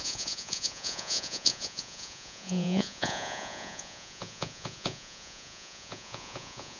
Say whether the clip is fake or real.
fake